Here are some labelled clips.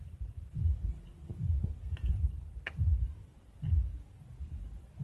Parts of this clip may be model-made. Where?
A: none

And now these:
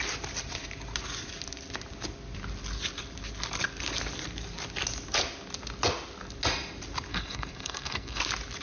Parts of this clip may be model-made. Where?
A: 7.1-8.2 (codec, SNAC)

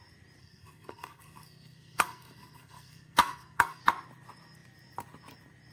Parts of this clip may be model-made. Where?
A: 0.4-3.8 (codec, SNAC)

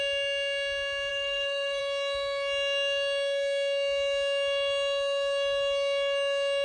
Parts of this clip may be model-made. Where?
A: 1.1-1.8 (codec, SNAC)